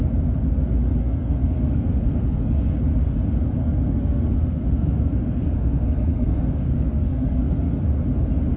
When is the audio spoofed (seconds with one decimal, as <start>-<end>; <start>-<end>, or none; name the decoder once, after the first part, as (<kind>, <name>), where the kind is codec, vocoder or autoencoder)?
1.0-2.6 (codec, SNAC); 3.6-7.8